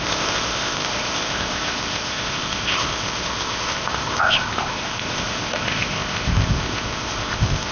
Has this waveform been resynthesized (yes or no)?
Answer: yes